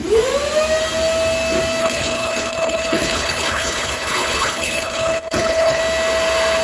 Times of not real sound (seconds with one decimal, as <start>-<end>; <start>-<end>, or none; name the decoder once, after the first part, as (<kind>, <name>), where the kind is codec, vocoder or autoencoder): 1.8-5.8 (codec, HILCodec)